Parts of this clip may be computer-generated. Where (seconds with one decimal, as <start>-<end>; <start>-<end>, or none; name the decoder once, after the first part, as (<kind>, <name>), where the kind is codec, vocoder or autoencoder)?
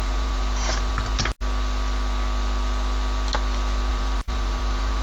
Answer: 0.0-0.9 (vocoder, BigVGAN v2); 3.9-5.0